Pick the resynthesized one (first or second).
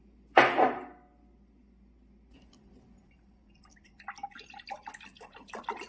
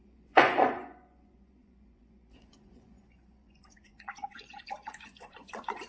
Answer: second